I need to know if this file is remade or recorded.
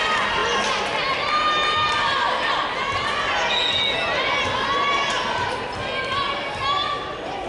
recorded